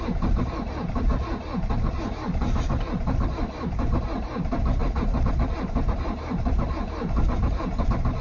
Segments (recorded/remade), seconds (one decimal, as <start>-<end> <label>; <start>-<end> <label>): 0.0-1.1 remade; 1.1-1.9 recorded; 1.9-8.2 remade

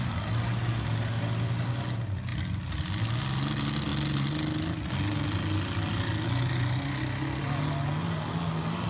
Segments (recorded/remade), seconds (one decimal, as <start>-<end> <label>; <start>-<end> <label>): 0.0-8.9 recorded

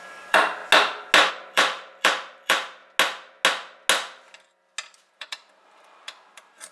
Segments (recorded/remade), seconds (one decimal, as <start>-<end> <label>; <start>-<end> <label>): 0.0-0.6 remade; 0.6-1.3 recorded; 1.3-2.8 remade; 2.8-5.1 recorded; 5.1-6.7 remade